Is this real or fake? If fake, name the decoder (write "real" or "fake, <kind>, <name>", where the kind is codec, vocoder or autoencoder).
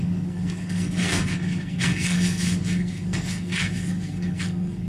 fake, codec, SNAC